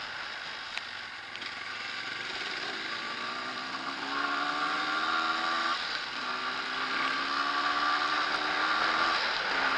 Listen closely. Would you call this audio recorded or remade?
recorded